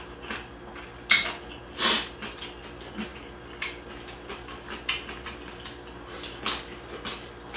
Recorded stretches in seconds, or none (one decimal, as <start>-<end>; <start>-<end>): 0.0-7.6